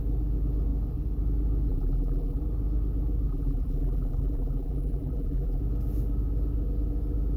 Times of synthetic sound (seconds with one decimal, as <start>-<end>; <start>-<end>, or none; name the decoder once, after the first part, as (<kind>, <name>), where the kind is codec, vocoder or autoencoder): 1.7-2.4 (vocoder, BigVGAN v2); 3.3-5.6